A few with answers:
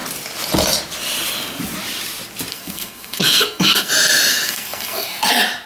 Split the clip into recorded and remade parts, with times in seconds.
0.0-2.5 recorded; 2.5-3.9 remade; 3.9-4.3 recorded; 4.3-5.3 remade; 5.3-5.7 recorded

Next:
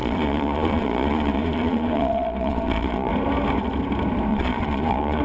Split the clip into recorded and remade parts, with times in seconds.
0.0-3.1 remade; 3.1-4.3 recorded; 4.3-5.2 remade